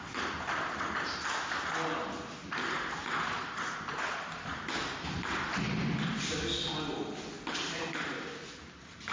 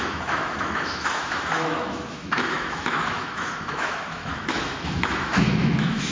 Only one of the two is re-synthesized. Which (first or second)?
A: second